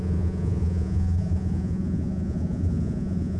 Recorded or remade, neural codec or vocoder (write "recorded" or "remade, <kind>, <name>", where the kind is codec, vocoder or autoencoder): remade, vocoder, Vocos